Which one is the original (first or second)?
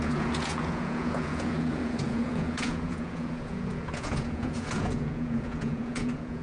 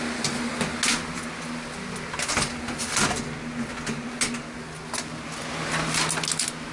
second